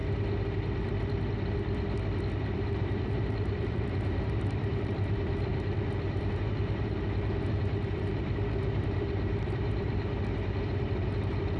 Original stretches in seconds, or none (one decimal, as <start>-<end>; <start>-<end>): 0.0-2.4